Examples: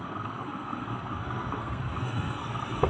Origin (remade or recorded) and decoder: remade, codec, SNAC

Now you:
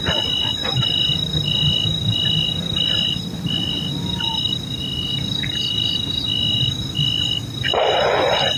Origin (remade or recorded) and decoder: recorded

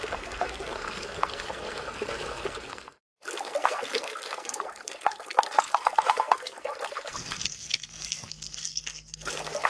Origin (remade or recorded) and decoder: remade, codec, SNAC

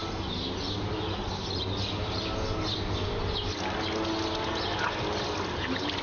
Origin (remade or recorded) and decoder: recorded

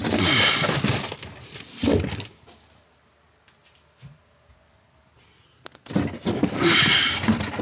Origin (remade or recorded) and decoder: recorded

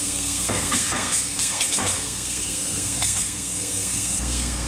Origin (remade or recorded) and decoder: remade, codec, SNAC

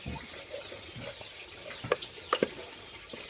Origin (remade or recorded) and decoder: recorded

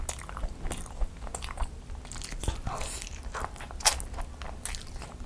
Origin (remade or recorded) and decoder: recorded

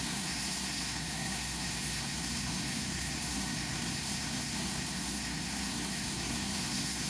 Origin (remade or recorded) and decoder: remade, codec, SNAC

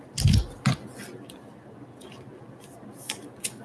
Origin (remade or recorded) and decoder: recorded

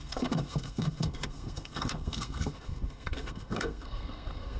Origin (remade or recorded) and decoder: remade, codec, SNAC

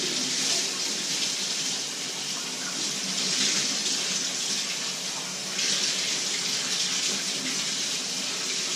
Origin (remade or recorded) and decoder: recorded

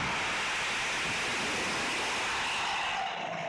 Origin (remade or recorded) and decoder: recorded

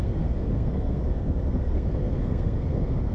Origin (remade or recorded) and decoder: remade, codec, SNAC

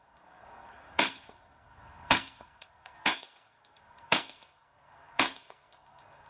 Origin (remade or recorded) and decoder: remade, codec, SNAC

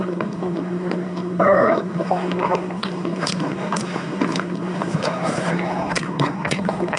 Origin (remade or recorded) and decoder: remade, codec, SNAC